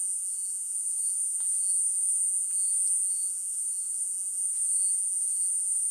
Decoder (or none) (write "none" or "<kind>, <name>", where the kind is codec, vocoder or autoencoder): vocoder, Vocos